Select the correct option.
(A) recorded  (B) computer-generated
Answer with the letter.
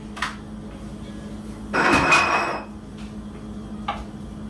A